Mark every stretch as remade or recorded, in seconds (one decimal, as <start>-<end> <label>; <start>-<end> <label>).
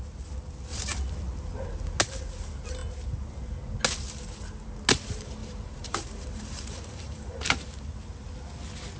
0.0-5.4 recorded; 5.4-7.7 remade; 7.7-9.0 recorded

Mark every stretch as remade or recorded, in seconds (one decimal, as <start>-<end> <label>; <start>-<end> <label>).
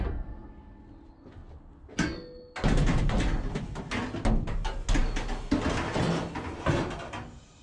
0.0-7.6 recorded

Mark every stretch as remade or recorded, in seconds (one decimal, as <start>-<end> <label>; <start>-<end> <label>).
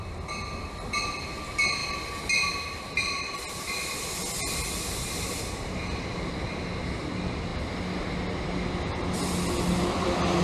0.0-1.8 recorded; 1.8-4.9 remade; 4.9-10.4 recorded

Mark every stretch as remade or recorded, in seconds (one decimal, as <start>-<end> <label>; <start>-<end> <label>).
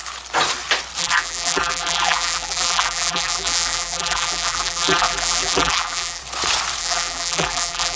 0.0-1.0 recorded; 1.0-6.2 remade; 6.2-6.8 recorded; 6.8-8.0 remade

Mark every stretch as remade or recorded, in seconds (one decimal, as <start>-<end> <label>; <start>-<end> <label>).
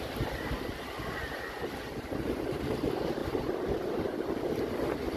0.0-3.2 recorded; 3.2-4.3 remade; 4.3-5.2 recorded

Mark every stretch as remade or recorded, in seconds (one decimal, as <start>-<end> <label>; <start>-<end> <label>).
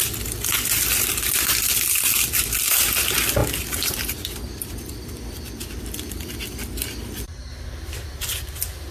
0.0-3.4 recorded; 3.4-5.7 remade; 5.7-8.9 recorded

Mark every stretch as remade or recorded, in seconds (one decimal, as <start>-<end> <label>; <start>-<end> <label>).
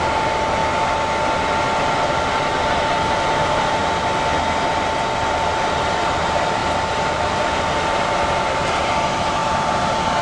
0.0-0.6 remade; 0.6-2.8 recorded; 2.8-3.8 remade; 3.8-4.7 recorded; 4.7-6.6 remade; 6.6-7.1 recorded; 7.1-10.2 remade